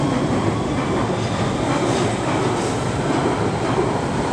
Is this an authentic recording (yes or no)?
yes